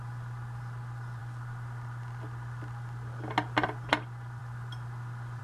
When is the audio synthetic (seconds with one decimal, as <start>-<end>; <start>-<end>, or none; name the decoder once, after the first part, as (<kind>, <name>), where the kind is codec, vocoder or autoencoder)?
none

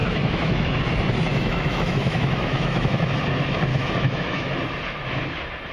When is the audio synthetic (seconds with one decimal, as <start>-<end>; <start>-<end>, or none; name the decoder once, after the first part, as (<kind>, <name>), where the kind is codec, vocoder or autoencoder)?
0.0-0.8 (autoencoder, DAC-VAE); 1.3-3.1; 3.7-4.6

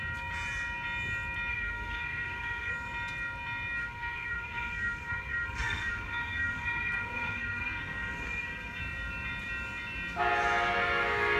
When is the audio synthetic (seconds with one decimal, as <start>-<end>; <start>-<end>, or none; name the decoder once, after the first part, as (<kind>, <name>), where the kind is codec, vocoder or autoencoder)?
1.5-2.7 (codec, SNAC); 3.8-8.8

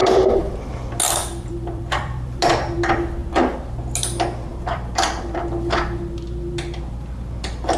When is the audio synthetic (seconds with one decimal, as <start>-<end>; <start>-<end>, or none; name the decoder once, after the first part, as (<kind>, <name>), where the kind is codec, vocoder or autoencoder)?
0.0-0.7 (vocoder, BigVGAN v2); 1.2-2.4; 4.5-5.4

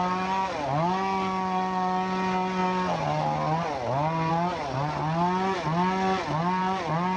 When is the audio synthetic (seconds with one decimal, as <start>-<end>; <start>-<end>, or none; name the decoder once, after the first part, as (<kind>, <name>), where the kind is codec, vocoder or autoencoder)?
none